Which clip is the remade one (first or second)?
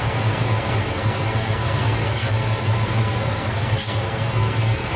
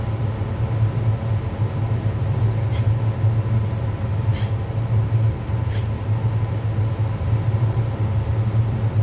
first